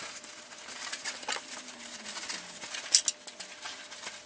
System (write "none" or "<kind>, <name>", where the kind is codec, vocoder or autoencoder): none